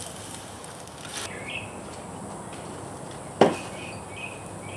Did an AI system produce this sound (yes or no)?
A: no